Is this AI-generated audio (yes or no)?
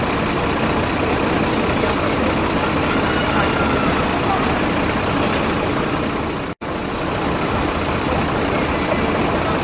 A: no